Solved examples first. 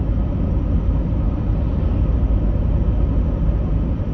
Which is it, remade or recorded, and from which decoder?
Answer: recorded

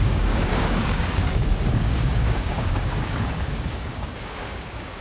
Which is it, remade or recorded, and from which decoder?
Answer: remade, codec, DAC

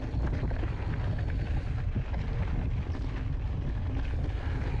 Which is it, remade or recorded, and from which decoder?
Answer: recorded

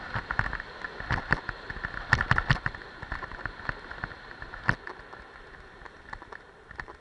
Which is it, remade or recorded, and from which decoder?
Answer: recorded